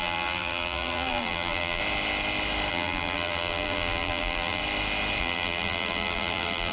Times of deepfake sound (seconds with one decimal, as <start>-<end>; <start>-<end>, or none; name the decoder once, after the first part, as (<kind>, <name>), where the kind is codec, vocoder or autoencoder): 0.0-1.8 (vocoder, BigVGAN v2); 2.7-4.6; 5.2-6.7